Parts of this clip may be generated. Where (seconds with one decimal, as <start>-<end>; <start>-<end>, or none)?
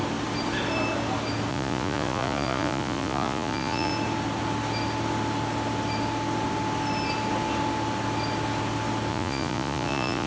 1.5-3.9; 9.1-10.3